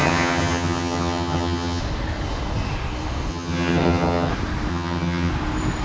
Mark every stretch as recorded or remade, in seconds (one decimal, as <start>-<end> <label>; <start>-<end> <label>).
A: 0.0-1.8 remade; 1.8-3.3 recorded; 3.3-4.3 remade; 4.3-4.7 recorded; 4.7-5.3 remade; 5.3-5.8 recorded